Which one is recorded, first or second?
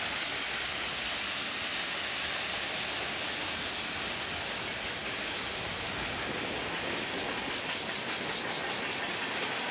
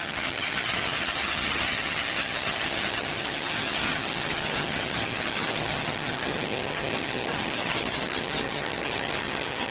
first